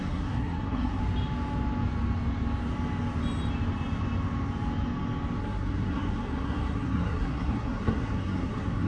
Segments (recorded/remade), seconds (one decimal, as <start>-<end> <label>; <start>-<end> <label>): 0.0-1.0 remade; 1.0-5.4 recorded; 5.4-8.9 remade